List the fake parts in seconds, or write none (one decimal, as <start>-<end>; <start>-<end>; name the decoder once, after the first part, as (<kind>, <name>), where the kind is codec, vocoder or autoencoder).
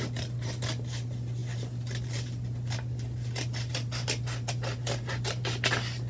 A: none